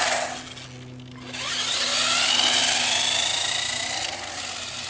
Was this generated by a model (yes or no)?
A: no